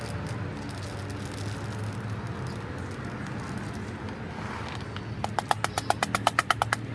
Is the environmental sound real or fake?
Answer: real